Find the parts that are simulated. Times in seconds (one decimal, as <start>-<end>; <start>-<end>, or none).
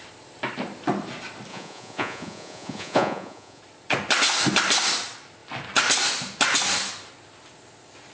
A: 1.5-3.6